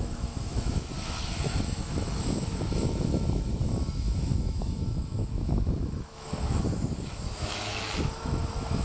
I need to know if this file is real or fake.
fake